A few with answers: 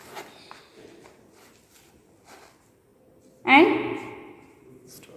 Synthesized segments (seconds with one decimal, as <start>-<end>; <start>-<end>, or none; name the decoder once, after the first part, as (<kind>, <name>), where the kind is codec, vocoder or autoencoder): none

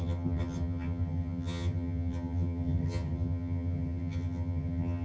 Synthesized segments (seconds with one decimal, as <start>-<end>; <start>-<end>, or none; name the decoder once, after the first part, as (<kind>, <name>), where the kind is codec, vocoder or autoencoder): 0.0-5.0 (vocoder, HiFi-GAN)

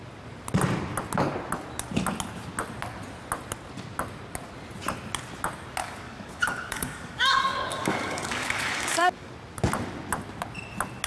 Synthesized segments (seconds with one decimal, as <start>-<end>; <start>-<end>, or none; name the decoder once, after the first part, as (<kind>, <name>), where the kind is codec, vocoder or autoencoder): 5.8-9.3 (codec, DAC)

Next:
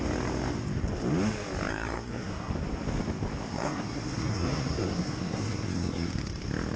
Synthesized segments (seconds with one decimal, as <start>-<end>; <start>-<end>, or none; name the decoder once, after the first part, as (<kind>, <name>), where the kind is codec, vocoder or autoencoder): 1.7-2.5 (codec, SNAC); 3.5-6.1

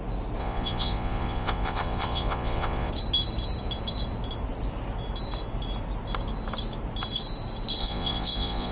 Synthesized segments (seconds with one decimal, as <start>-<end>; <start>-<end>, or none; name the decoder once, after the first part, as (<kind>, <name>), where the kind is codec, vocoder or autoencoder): 0.4-2.9 (vocoder, Vocos); 7.8-8.7

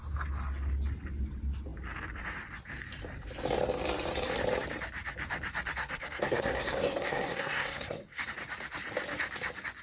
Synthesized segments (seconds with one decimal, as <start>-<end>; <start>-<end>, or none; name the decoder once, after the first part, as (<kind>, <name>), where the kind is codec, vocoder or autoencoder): 5.8-8.2 (codec, SNAC)